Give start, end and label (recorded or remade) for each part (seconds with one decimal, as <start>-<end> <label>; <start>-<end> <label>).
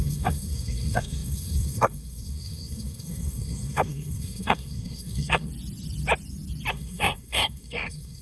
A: 0.0-5.5 remade; 5.5-6.7 recorded; 6.7-8.2 remade